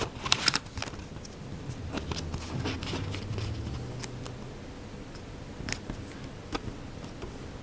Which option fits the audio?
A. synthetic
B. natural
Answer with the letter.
B